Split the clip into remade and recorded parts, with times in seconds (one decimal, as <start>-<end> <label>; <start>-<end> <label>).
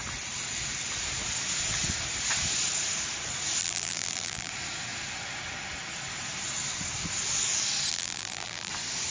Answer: 0.0-3.6 recorded; 3.6-4.5 remade; 4.5-7.9 recorded; 7.9-8.7 remade; 8.7-9.1 recorded